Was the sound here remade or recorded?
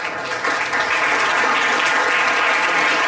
recorded